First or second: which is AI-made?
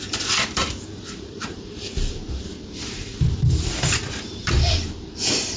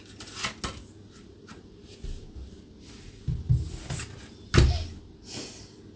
first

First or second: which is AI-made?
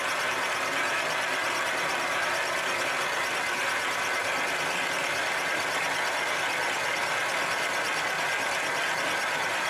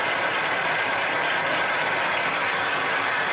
second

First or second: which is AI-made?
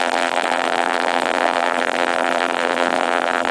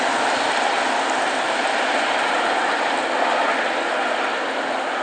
first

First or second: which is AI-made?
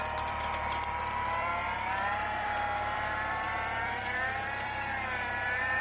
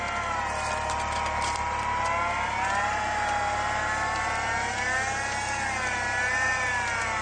first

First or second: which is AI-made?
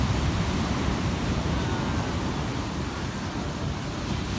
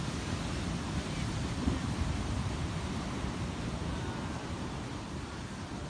second